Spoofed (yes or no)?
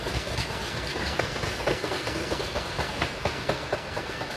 yes